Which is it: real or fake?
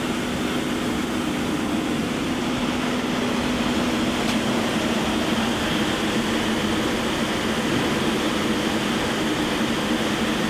real